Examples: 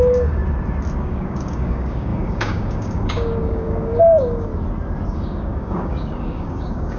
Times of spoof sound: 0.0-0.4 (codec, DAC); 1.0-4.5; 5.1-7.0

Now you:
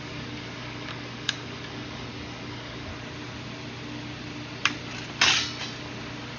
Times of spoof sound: 0.0-2.9 (codec, DAC)

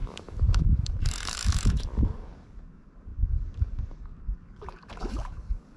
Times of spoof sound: 0.0-5.8 (codec, DAC)

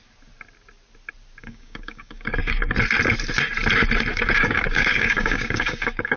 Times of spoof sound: 1.4-2.7 (codec, DAC); 4.1-6.2

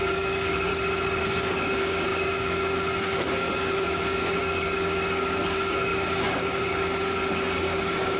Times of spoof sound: 0.0-0.7 (codec, DAC); 1.2-8.2

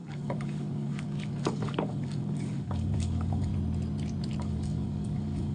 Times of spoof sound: 0.0-3.5 (codec, DAC); 4.4-5.5

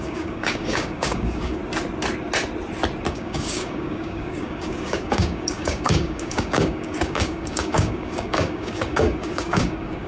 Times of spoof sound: 0.0-1.6 (codec, DAC); 3.1-10.1

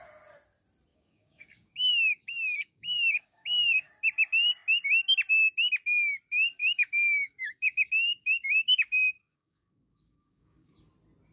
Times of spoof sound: 0.9-3.9 (codec, DAC); 6.6-10.7